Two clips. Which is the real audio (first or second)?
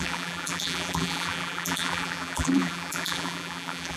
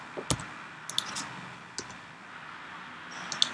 second